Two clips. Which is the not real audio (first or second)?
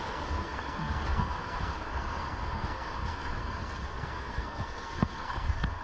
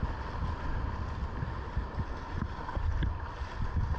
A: first